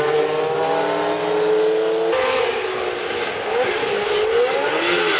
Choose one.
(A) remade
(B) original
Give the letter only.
B